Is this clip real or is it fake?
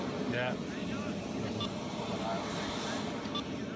real